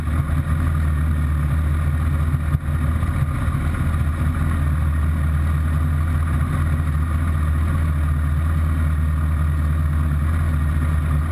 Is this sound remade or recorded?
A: recorded